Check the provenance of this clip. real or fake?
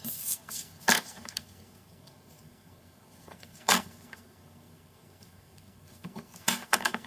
fake